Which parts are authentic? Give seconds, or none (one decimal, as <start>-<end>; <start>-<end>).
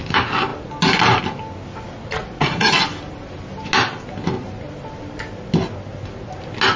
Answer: 0.0-2.2; 2.7-6.8